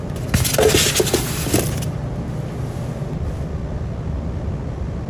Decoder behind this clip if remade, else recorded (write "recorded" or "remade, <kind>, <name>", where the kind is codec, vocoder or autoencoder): recorded